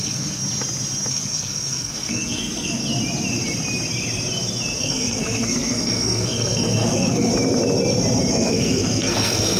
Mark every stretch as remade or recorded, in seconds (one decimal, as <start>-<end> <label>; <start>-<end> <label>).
0.0-0.4 remade; 0.4-1.1 recorded; 1.1-2.8 remade; 2.8-4.8 recorded; 4.8-7.3 remade; 7.3-8.3 recorded; 8.3-9.6 remade